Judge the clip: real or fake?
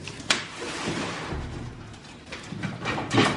fake